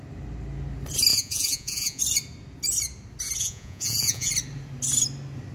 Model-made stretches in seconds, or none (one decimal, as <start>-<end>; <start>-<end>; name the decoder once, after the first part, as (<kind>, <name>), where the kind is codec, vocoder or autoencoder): 1.1-2.0 (vocoder, Vocos); 3.4-4.3